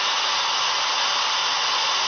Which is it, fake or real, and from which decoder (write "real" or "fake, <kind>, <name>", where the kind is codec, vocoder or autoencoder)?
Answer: real